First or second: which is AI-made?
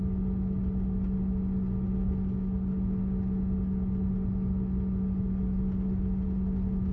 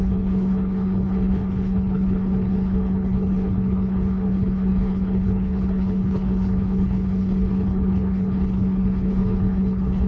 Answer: second